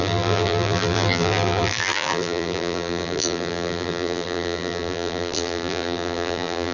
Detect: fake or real fake